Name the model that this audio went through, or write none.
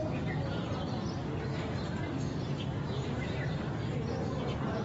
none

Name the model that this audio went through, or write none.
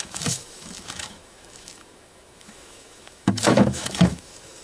autoencoder, DAC-VAE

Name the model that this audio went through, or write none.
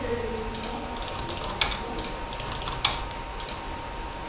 none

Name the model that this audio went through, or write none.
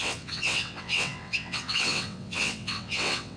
vocoder, WaveNeXt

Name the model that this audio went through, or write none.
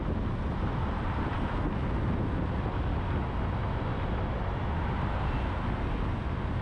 none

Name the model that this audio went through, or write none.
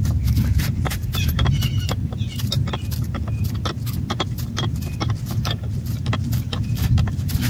vocoder, BigVGAN v2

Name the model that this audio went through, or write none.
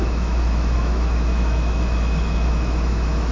autoencoder, DAC-VAE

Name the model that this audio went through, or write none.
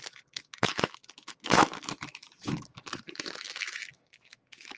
autoencoder, DAC-VAE